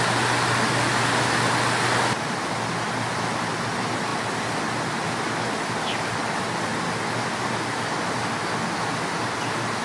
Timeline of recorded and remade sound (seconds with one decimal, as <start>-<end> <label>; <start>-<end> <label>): 0.0-9.8 recorded